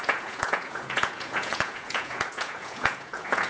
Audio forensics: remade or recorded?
remade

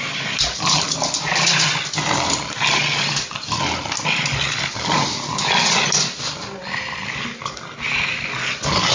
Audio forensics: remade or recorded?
recorded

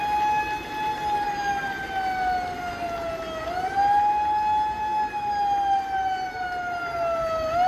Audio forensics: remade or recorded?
recorded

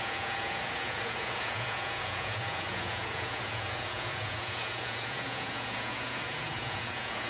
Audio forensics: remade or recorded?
remade